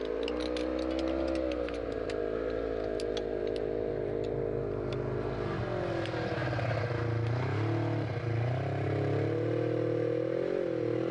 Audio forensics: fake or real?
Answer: real